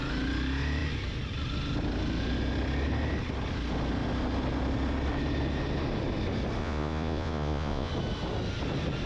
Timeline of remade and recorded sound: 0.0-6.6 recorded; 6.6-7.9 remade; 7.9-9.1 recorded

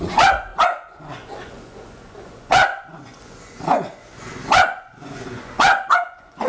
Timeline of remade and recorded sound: 0.0-6.5 remade

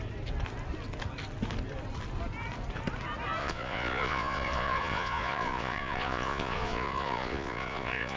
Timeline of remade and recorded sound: 0.0-3.4 recorded; 3.4-8.2 remade

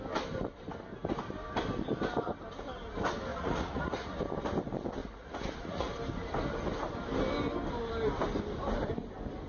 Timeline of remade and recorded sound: 0.0-3.3 recorded; 3.3-4.2 remade; 4.2-5.0 recorded; 5.0-5.9 remade; 5.9-9.5 recorded

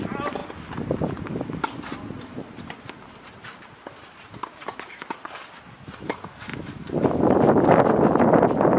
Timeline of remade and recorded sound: 0.0-8.8 recorded

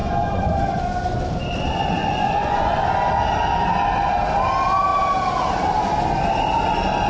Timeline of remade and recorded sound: 0.0-0.8 remade; 0.8-2.0 recorded; 2.0-2.8 remade; 2.8-7.1 recorded